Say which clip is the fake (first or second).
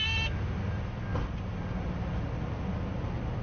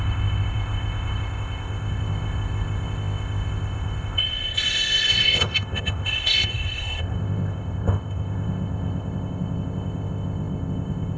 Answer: second